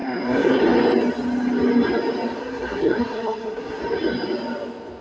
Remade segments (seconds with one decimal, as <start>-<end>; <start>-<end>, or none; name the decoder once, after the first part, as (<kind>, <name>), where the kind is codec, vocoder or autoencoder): 0.0-0.6 (codec, SNAC); 2.4-3.8